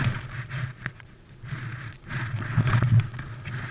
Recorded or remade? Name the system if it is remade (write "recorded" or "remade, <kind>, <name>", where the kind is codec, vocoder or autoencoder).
remade, vocoder, Vocos